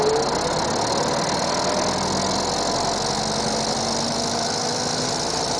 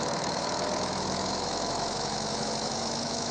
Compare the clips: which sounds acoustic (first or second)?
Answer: first